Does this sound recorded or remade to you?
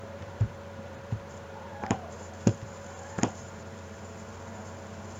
remade